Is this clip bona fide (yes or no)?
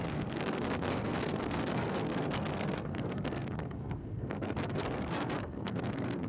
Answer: no